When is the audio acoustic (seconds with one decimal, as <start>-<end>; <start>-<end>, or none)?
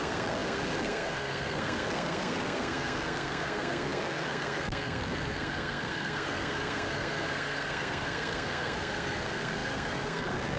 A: none